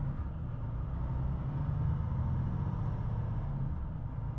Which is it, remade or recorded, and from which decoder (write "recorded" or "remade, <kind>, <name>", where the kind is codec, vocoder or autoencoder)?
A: recorded